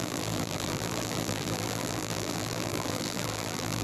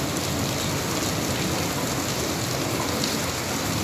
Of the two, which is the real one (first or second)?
second